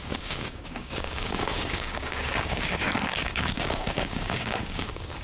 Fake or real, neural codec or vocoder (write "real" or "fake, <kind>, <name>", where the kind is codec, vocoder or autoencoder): fake, codec, DAC